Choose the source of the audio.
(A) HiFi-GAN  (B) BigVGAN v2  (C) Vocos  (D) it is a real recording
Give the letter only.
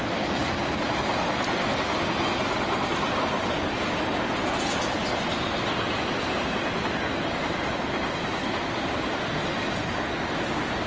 D